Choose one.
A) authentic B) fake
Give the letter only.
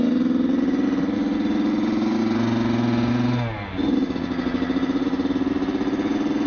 A